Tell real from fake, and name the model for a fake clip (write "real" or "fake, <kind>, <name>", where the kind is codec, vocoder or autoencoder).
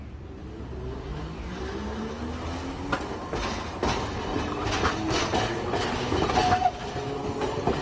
real